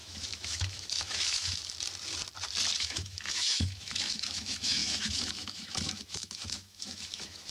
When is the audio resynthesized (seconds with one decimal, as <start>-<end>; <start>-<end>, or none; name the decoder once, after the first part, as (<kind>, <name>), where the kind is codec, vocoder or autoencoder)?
0.0-1.6 (autoencoder, DAC-VAE); 2.8-7.5

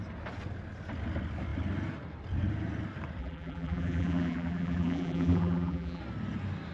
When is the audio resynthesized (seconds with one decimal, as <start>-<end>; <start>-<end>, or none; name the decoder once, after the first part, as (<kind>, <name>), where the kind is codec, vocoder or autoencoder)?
3.2-6.0 (vocoder, BigVGAN v2)

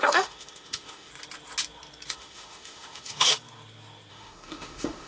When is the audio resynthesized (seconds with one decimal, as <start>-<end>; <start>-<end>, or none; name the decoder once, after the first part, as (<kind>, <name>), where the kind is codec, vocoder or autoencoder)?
0.0-1.1 (autoencoder, DAC-VAE); 2.1-3.3; 4.1-5.1

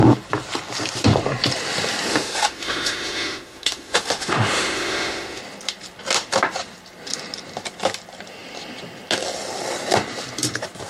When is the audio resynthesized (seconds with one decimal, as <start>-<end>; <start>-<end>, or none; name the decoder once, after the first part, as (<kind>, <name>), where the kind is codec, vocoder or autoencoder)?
2.1-5.4 (autoencoder, DAC-VAE)

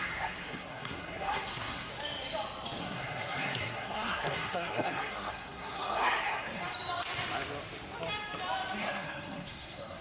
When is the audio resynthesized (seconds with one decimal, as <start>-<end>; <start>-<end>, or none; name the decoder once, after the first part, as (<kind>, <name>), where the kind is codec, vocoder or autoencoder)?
0.0-1.9 (codec, SNAC); 2.8-6.6; 8.8-10.0

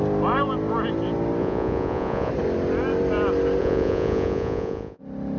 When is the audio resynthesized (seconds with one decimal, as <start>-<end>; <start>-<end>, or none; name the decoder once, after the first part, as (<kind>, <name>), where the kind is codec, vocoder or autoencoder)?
1.4-2.3 (vocoder, Vocos); 3.6-5.0